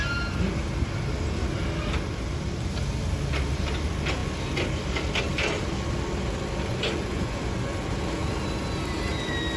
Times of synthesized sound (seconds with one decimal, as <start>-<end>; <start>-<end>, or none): 6.7-7.7